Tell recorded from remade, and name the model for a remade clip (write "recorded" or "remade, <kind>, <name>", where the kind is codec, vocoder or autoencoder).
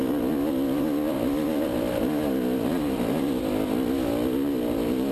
recorded